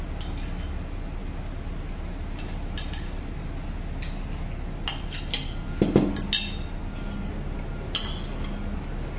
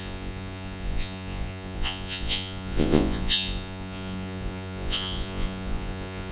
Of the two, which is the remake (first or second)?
second